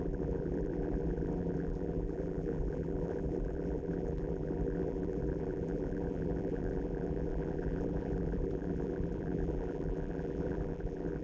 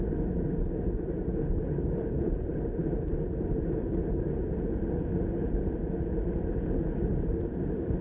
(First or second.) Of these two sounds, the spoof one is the first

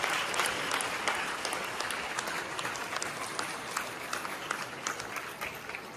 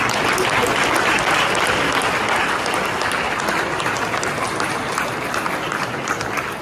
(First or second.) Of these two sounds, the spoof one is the first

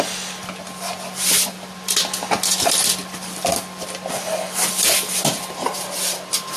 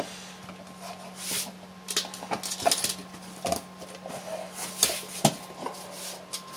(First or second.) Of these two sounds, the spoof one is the first